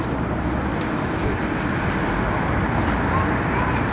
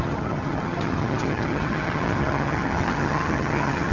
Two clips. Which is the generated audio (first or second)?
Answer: second